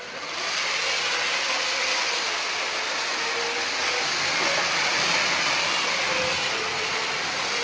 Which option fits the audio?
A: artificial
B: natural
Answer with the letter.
B